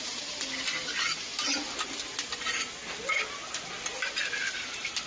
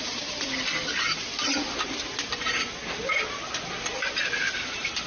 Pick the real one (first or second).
first